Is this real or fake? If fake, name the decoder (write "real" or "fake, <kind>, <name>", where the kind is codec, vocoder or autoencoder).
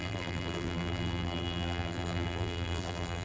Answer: fake, vocoder, BigVGAN v2